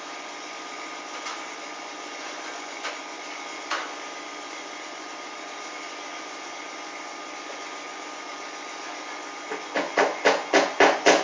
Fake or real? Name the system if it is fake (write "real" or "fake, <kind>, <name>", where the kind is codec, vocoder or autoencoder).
fake, vocoder, Vocos